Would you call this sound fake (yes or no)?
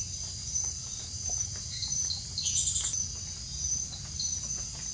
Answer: no